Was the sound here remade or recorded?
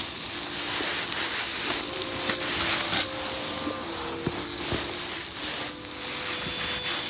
recorded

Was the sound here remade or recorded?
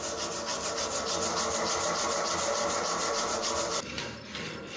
recorded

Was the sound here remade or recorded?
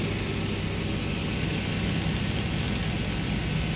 recorded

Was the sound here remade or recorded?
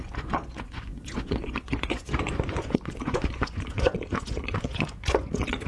remade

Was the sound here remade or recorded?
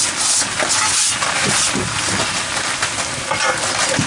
recorded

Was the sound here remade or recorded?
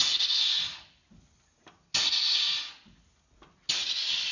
recorded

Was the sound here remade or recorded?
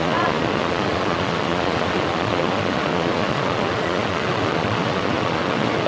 remade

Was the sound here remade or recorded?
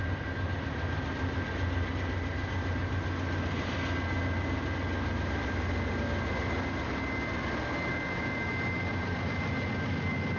recorded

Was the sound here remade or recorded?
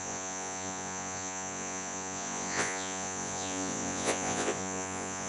remade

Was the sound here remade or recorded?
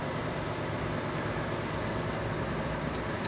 recorded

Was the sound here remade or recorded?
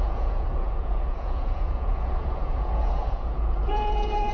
remade